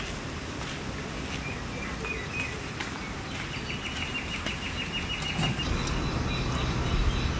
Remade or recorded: recorded